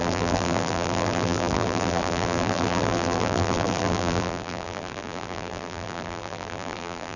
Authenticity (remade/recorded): remade